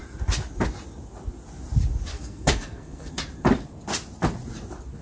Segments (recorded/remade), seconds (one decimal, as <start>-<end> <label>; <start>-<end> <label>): 0.0-2.1 recorded; 2.1-3.1 remade; 3.1-5.0 recorded